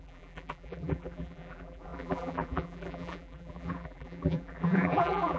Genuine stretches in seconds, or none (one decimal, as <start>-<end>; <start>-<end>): none